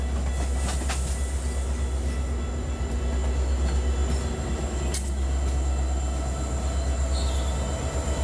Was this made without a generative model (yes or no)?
yes